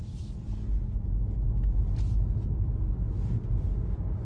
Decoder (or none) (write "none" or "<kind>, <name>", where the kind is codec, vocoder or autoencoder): none